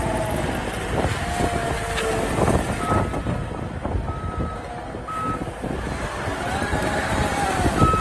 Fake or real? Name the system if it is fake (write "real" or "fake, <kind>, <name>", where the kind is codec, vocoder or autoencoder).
real